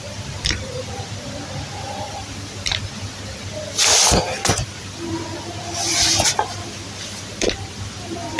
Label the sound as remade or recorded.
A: recorded